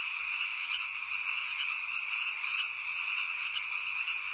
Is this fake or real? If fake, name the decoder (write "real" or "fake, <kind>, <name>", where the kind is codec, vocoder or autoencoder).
fake, vocoder, Vocos